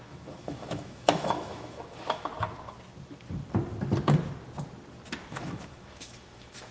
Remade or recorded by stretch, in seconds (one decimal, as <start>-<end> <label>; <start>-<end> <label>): 0.0-2.3 remade; 2.3-5.3 recorded; 5.3-6.7 remade